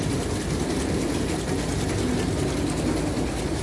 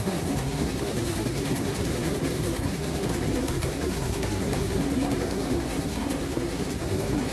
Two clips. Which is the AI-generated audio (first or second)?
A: second